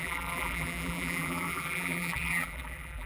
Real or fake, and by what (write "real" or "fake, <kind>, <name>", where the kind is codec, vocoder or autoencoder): fake, vocoder, BigVGAN v2